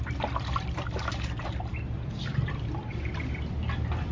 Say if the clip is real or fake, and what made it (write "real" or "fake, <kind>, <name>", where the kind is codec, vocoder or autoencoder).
real